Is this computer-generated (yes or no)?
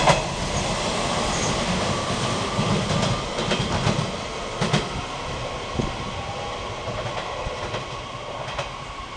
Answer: no